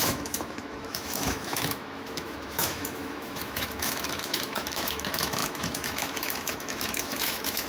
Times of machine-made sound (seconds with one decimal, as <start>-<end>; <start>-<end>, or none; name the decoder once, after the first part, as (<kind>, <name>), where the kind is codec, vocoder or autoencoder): 0.0-7.7 (autoencoder, DAC-VAE)